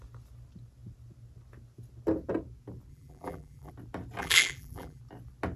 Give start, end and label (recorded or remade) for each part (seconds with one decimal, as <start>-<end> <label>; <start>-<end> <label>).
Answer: 0.0-2.9 recorded; 2.9-3.7 remade; 3.7-4.2 recorded; 4.2-5.0 remade; 5.0-5.6 recorded